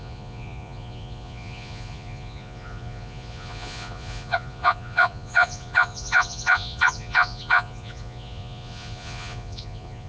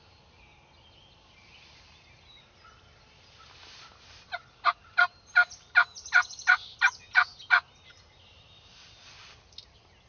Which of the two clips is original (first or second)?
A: second